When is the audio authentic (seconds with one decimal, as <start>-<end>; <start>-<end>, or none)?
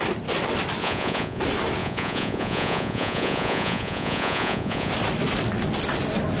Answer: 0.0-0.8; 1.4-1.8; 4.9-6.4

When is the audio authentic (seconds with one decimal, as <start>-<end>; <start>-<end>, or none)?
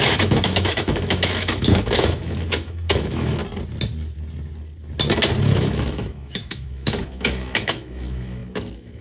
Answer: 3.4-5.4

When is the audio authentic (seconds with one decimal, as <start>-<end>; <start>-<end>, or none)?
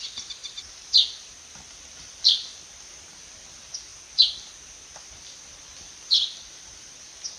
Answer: 0.4-1.1; 2.5-3.5; 3.9-5.1